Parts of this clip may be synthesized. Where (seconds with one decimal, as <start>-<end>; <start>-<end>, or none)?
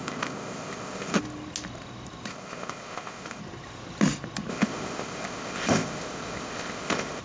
0.0-1.2; 2.3-3.4; 4.5-7.2